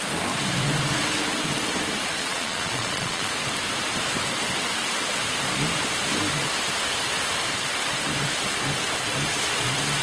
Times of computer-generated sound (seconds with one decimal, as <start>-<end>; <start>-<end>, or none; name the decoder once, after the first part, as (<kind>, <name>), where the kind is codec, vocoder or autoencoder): 2.2-3.3 (vocoder, Vocos)